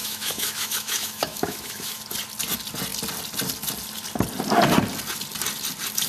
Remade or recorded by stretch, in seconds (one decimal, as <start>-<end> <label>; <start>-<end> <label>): 0.0-2.0 remade; 2.0-6.1 recorded